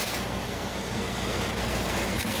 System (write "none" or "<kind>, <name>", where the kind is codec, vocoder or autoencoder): codec, SNAC